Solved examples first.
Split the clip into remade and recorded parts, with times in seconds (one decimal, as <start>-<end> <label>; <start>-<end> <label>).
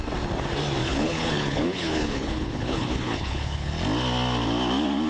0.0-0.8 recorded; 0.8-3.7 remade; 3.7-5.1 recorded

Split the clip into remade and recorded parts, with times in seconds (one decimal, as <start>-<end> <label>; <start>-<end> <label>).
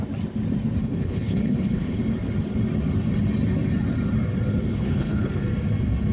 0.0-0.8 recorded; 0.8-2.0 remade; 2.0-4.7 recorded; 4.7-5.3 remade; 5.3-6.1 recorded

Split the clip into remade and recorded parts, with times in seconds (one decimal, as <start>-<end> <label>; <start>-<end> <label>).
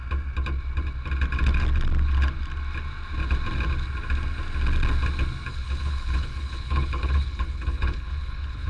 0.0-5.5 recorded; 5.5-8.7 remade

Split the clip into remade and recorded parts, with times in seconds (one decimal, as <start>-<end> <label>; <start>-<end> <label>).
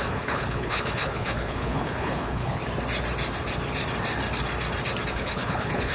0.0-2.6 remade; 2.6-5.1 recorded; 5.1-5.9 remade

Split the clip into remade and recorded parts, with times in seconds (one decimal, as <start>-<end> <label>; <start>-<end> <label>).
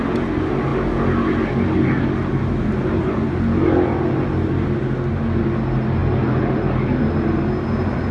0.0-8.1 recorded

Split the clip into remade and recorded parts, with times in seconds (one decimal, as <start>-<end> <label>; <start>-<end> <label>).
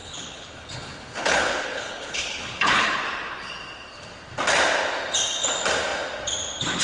0.0-3.0 remade; 3.0-6.8 recorded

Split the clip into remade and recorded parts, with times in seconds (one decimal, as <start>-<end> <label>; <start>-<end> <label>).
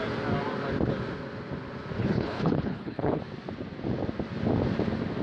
0.0-2.0 recorded; 2.0-3.2 remade; 3.2-5.2 recorded